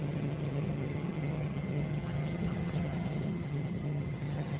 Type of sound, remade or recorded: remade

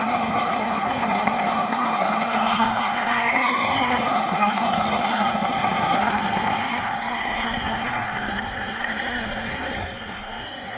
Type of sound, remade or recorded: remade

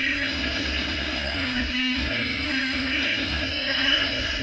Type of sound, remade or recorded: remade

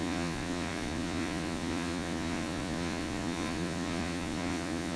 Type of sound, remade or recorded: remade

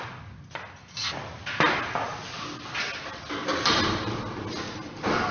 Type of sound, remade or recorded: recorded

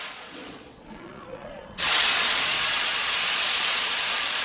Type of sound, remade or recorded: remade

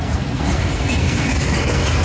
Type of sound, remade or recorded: remade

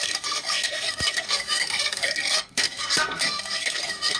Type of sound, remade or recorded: remade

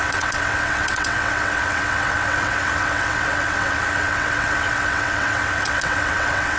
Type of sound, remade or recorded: remade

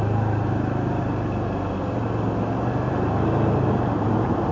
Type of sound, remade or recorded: recorded